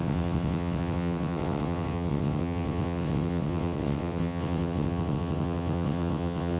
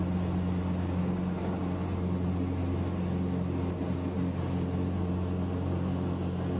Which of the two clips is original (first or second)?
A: second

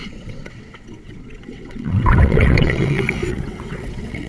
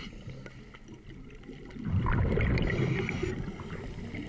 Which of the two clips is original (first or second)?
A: second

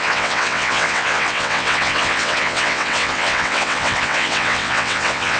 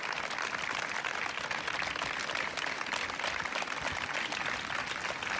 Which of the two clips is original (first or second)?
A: second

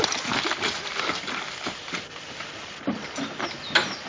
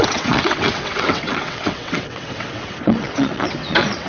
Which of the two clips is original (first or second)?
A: first